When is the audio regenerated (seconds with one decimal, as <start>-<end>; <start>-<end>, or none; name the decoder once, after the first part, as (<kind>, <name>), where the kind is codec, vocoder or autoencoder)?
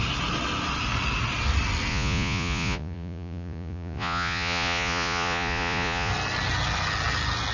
1.9-6.1 (vocoder, Vocos)